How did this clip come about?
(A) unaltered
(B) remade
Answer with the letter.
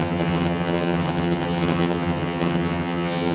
B